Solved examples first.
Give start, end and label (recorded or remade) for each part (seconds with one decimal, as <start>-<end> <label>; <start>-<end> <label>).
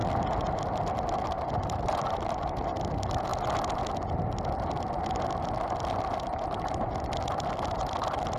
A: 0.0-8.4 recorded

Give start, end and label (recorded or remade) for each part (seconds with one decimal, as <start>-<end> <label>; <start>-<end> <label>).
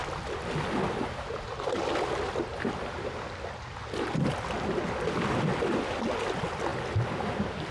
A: 0.0-7.7 recorded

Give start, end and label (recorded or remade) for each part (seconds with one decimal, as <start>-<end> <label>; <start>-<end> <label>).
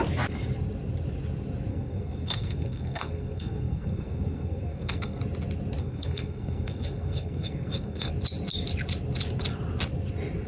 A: 0.0-1.7 recorded; 1.7-5.2 remade; 5.2-5.8 recorded; 5.8-8.1 remade; 8.1-10.5 recorded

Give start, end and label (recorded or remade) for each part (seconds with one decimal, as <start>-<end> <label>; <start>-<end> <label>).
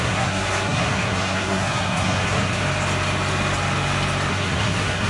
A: 0.0-2.6 remade; 2.6-4.3 recorded; 4.3-5.1 remade